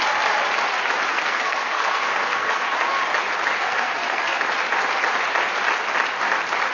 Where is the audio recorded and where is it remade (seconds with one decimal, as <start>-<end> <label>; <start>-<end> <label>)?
0.0-1.1 recorded; 1.1-2.6 remade; 2.6-3.6 recorded; 3.6-4.4 remade; 4.4-6.7 recorded